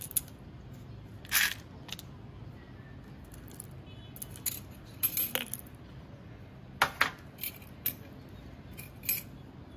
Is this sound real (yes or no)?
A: yes